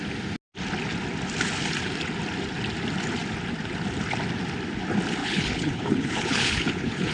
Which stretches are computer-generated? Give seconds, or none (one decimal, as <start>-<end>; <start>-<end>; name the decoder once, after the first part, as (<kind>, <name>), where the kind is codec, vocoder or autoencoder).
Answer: 5.2-7.1 (codec, HILCodec)